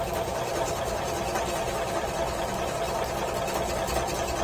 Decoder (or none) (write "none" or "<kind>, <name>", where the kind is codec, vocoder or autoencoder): none